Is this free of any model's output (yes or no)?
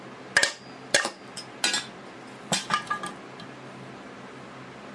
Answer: yes